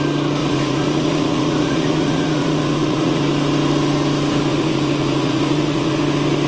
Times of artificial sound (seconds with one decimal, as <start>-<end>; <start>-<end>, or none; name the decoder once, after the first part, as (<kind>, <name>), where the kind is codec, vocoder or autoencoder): 0.4-3.2 (vocoder, Vocos); 4.5-6.0